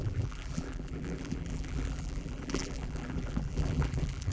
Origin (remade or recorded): remade